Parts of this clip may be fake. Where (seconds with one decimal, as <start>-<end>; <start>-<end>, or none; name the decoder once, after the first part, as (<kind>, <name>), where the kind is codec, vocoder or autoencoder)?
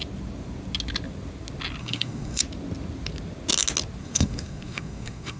1.8-2.4 (codec, SNAC); 4.0-5.4